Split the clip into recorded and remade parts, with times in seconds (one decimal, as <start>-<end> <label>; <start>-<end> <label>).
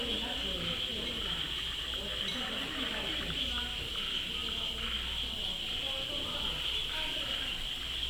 0.0-0.9 recorded; 0.9-4.0 remade; 4.0-8.1 recorded